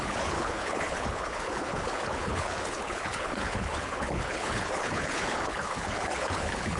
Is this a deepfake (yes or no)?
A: yes